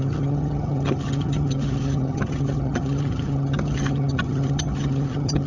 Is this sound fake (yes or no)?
yes